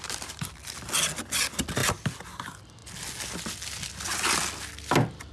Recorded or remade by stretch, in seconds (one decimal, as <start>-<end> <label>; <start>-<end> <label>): 0.0-5.3 recorded